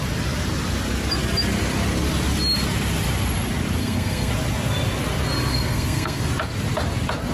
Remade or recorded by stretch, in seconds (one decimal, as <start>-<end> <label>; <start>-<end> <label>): 0.0-3.8 recorded; 3.8-4.3 remade; 4.3-5.5 recorded; 5.5-6.2 remade; 6.2-7.3 recorded